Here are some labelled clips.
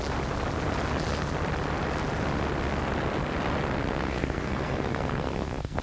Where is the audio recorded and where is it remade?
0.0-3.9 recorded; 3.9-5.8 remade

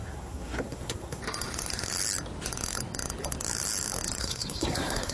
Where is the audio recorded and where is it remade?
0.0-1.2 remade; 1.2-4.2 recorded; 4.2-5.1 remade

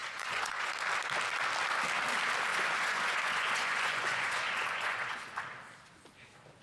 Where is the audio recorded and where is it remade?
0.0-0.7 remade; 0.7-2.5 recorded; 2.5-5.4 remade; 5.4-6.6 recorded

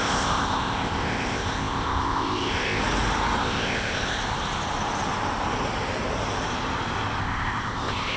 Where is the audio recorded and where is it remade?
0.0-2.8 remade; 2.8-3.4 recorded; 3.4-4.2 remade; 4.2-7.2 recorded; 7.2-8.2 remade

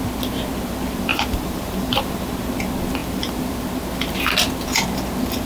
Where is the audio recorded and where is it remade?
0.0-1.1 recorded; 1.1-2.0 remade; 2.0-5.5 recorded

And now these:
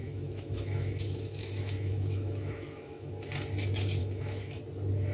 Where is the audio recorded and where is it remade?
0.0-3.1 remade; 3.1-4.0 recorded; 4.0-4.6 remade; 4.6-5.1 recorded